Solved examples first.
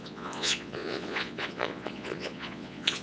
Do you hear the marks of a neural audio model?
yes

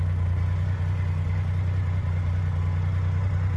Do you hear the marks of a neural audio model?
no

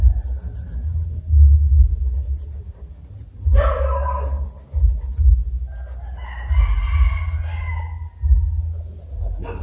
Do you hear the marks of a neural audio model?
no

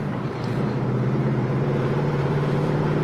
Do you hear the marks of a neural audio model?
yes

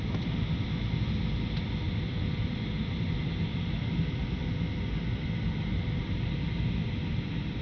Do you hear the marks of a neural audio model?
no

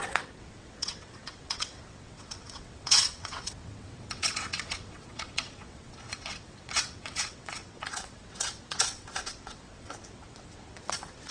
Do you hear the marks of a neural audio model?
yes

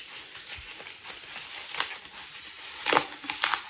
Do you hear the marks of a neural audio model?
no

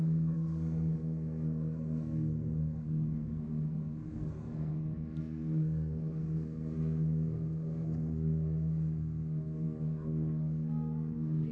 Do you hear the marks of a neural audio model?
yes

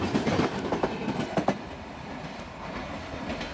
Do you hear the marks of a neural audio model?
no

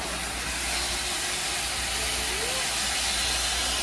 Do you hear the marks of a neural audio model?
no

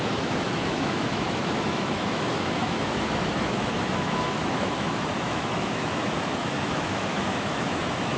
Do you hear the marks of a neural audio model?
yes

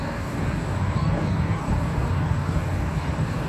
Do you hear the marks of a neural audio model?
yes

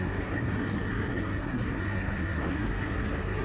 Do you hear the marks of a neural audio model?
yes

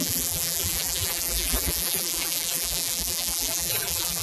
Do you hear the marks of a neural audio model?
yes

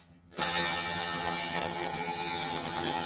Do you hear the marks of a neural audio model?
yes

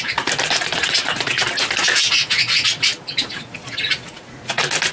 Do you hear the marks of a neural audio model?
no